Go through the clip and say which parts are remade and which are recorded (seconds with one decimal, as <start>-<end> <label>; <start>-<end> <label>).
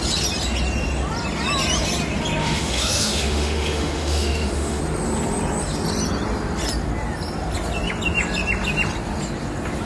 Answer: 0.0-2.4 recorded; 2.4-4.8 remade; 4.8-9.9 recorded